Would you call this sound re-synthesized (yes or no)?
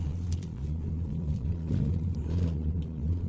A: yes